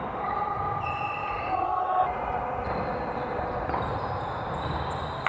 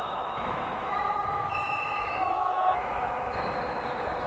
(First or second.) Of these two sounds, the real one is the first